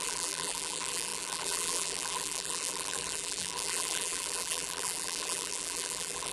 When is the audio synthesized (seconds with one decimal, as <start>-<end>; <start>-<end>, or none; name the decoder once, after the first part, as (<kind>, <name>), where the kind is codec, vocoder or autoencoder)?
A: 0.0-6.3 (vocoder, BigVGAN v2)